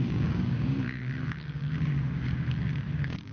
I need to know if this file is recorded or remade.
remade